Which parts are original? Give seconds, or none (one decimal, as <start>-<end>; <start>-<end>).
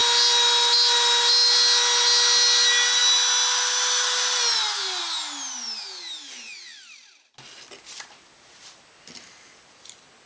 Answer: 0.0-10.3